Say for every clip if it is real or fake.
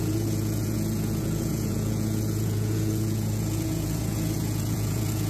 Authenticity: fake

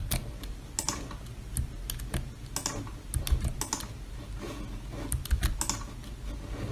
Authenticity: real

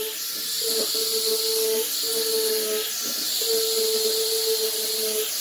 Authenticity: real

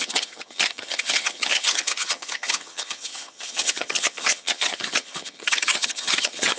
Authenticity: fake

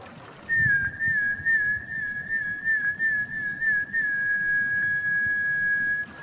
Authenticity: real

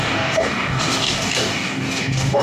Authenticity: fake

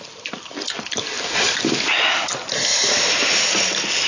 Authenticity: real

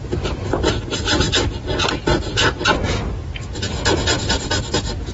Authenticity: real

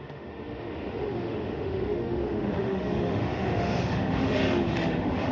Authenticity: fake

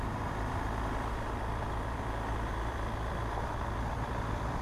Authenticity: fake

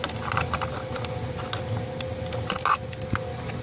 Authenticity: real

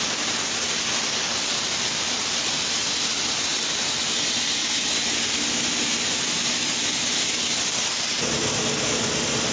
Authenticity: real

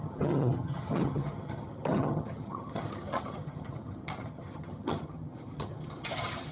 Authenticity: fake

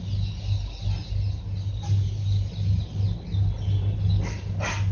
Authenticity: real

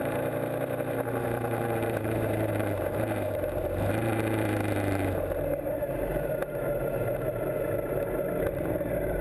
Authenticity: fake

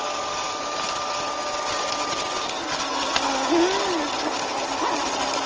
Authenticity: real